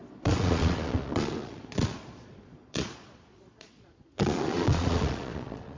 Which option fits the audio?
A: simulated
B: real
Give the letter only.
A